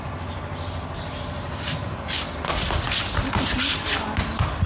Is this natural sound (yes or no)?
yes